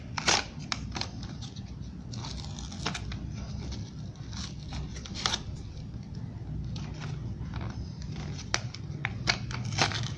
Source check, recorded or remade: recorded